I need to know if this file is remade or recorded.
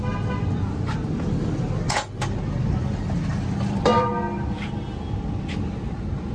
recorded